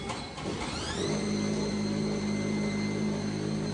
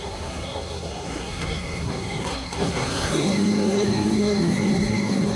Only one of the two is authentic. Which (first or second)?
first